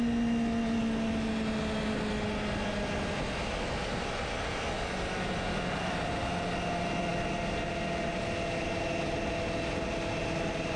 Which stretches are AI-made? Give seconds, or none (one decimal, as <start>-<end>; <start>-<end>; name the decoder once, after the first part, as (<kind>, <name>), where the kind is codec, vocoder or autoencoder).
none